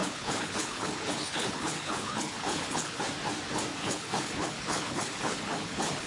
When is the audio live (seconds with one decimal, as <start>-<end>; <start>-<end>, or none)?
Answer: 3.0-3.8